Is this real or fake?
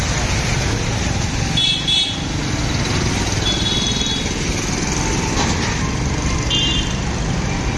real